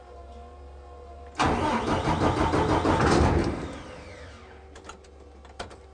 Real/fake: real